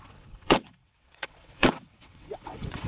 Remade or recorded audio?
remade